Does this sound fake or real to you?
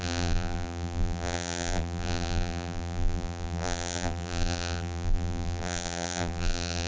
fake